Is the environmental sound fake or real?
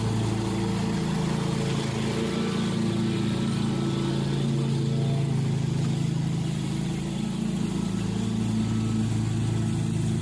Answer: real